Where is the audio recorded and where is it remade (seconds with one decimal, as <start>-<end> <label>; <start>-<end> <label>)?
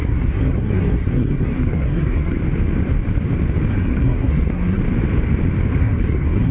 0.0-2.4 remade; 2.4-3.7 recorded; 3.7-4.8 remade; 4.8-5.8 recorded; 5.8-6.5 remade